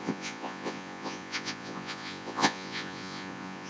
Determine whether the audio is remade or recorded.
remade